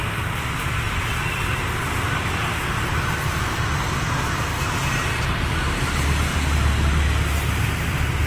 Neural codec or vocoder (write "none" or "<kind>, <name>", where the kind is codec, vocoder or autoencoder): none